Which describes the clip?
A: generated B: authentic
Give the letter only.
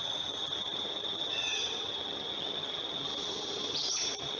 A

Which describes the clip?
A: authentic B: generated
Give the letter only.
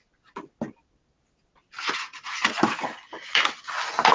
A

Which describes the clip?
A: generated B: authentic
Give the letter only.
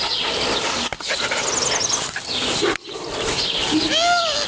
B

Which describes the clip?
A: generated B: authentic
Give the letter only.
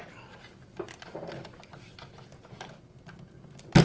B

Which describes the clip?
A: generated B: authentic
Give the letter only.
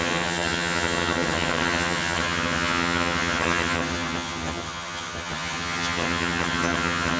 A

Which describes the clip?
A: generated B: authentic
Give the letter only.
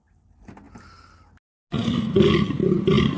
B